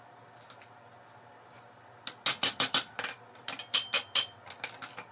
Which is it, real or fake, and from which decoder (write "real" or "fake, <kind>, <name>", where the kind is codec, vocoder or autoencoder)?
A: real